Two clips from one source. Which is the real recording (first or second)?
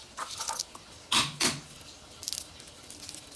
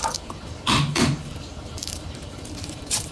first